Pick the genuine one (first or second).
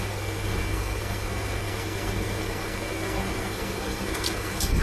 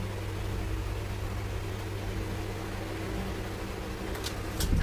second